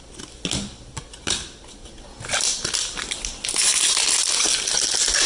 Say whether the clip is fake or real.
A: real